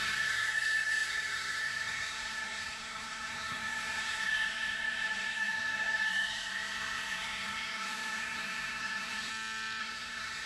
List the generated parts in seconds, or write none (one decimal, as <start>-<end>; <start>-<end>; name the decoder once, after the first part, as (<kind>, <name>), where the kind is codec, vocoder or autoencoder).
0.0-9.3 (codec, SNAC); 9.8-10.5